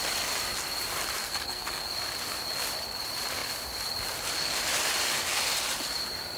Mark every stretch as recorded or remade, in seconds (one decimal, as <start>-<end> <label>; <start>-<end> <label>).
0.0-1.2 recorded; 1.2-1.9 remade; 1.9-6.4 recorded

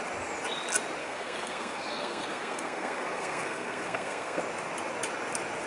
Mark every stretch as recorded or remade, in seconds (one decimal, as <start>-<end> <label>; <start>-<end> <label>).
0.0-1.0 recorded; 1.0-4.4 remade; 4.4-5.7 recorded

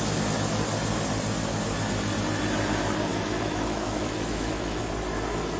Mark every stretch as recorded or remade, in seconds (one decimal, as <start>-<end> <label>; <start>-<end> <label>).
0.0-3.1 recorded; 3.1-4.8 remade; 4.8-5.6 recorded

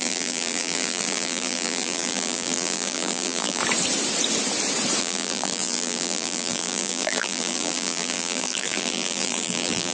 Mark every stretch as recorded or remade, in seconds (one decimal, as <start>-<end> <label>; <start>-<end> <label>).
0.0-3.6 remade; 3.6-5.0 recorded; 5.0-9.9 remade

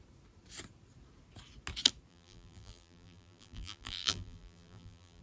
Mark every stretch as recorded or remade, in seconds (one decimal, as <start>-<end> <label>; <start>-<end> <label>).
0.0-2.1 recorded; 2.1-5.2 remade

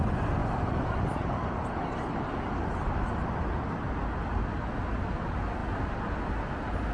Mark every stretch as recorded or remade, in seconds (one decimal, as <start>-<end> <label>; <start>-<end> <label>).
0.0-6.9 recorded

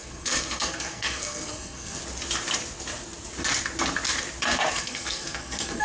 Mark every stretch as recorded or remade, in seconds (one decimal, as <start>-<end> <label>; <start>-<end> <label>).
0.0-2.0 remade; 2.0-4.7 recorded; 4.7-5.8 remade